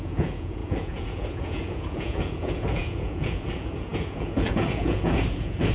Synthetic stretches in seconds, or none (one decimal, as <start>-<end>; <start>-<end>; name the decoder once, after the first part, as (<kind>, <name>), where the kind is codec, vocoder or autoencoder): 0.0-5.7 (vocoder, Vocos)